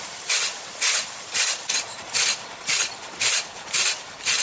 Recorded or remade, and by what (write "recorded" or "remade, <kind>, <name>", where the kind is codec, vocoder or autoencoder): remade, vocoder, BigVGAN v2